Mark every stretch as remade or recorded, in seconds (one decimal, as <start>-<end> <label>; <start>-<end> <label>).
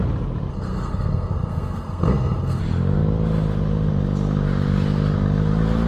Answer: 0.0-0.5 recorded; 0.5-2.6 remade; 2.6-5.9 recorded